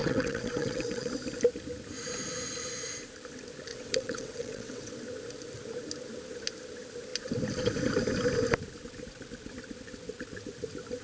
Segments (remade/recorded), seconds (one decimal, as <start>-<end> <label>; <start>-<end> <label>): 0.0-1.1 remade; 1.1-3.7 recorded; 3.7-4.9 remade; 4.9-11.0 recorded